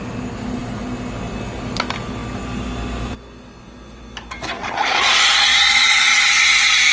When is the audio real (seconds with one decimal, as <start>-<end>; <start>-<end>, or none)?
0.0-4.6; 5.1-5.5; 6.0-6.9